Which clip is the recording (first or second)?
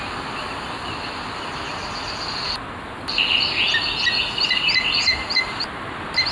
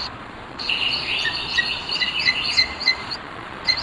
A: first